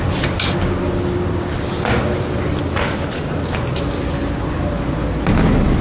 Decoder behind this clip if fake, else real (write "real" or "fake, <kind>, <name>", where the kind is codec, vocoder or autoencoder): real